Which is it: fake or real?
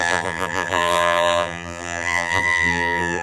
fake